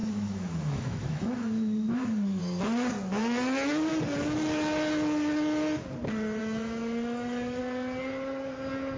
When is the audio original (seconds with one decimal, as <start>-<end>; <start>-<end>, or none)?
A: 2.4-6.4; 7.6-9.0

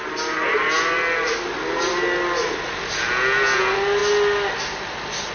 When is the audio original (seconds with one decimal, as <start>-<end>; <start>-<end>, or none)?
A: 0.0-5.3